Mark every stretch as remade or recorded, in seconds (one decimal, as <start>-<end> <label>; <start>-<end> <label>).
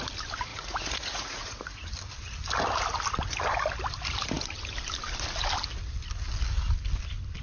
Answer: 0.0-0.5 recorded; 0.5-1.8 remade; 1.8-7.4 recorded